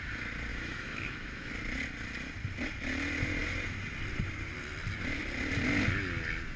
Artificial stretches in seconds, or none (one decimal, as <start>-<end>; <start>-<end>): 0.5-1.5